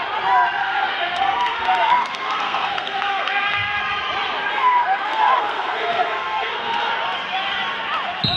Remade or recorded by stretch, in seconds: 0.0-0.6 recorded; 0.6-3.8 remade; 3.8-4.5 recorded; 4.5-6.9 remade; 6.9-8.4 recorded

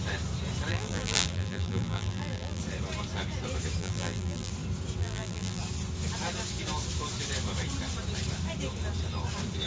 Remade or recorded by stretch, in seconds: 0.0-0.7 recorded; 0.7-2.6 remade; 2.6-3.8 recorded; 3.8-4.5 remade; 4.5-5.0 recorded; 5.0-5.6 remade; 5.6-9.7 recorded

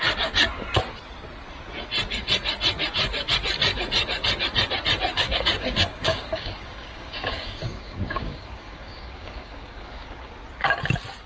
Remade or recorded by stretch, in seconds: 0.0-5.1 recorded; 5.1-10.3 remade; 10.3-11.3 recorded

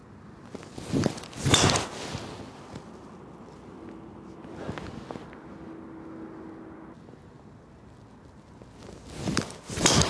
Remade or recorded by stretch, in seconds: 0.0-10.1 recorded

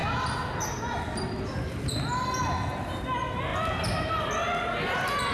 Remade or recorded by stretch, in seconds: 0.0-5.3 recorded

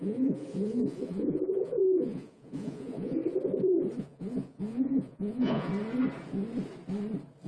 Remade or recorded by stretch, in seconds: 0.0-3.2 remade; 3.2-4.0 recorded; 4.0-5.7 remade; 5.7-7.5 recorded